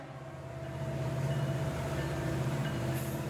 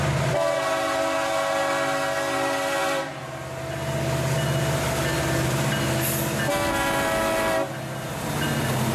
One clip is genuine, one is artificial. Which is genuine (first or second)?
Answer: second